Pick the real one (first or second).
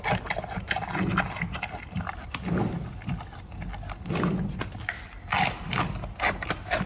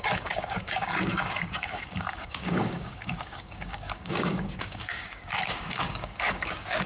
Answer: first